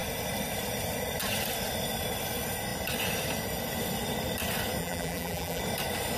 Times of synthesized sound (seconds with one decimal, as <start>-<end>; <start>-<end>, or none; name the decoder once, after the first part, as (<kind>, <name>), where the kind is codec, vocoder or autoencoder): 4.8-5.6 (vocoder, BigVGAN v2)